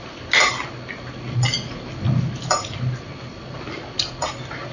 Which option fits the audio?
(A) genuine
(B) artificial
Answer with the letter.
A